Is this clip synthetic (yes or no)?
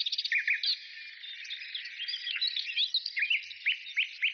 no